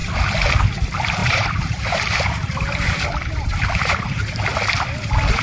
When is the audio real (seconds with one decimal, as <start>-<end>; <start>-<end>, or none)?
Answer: 0.0-1.2; 4.4-5.4